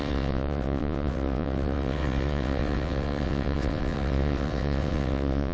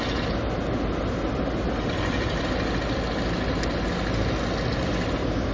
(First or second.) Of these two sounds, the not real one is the first